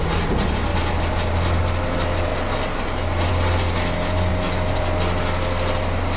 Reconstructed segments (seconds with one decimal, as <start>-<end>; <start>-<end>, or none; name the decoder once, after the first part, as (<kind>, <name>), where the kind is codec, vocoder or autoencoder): none